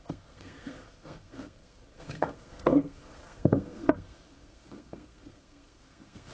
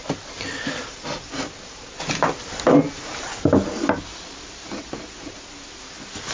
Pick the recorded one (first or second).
second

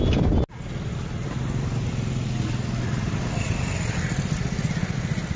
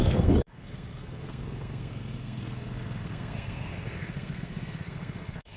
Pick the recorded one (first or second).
first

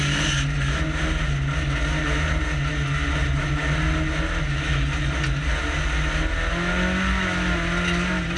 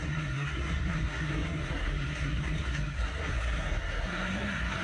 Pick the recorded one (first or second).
first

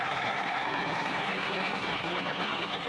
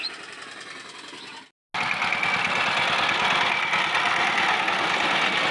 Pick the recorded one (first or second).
second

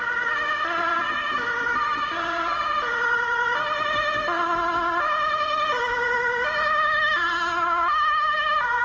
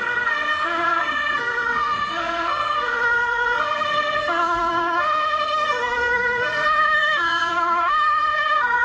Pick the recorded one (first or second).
first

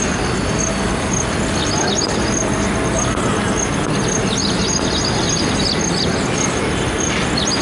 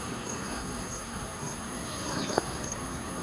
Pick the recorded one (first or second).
first